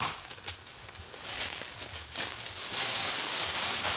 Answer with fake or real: fake